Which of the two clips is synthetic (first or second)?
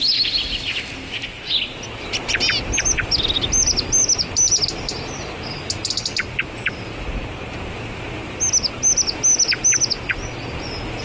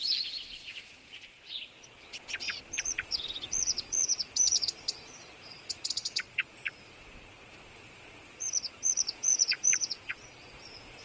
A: second